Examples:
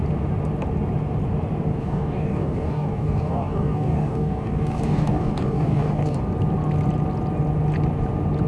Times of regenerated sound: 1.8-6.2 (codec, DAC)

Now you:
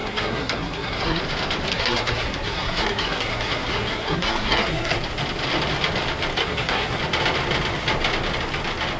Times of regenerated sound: 0.0-1.2 (codec, SNAC); 1.7-5.0; 6.4-7.0

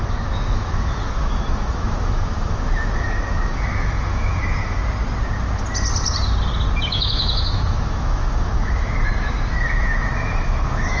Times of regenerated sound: 0.0-4.8 (autoencoder, DAC-VAE); 6.8-11.0

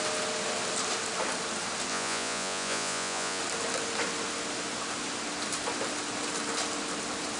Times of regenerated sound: 1.9-3.4 (vocoder, Vocos)

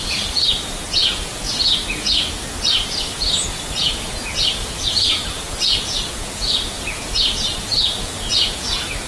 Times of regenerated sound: 0.0-9.1 (vocoder, Vocos)

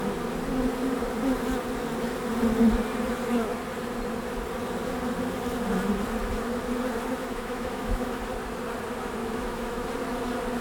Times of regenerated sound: 7.2-8.2 (autoencoder, DAC-VAE); 9.2-9.9